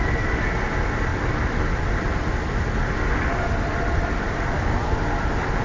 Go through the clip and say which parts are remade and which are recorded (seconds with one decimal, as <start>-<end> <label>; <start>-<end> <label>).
0.0-5.6 recorded